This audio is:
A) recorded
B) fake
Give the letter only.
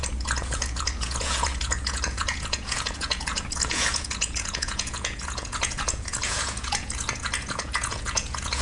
B